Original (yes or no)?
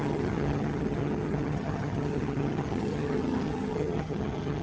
no